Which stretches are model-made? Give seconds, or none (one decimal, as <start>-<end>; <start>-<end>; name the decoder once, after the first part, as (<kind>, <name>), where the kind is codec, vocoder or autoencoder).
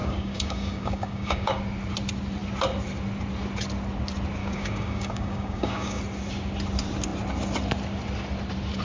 0.0-1.6 (codec, DAC); 4.4-6.0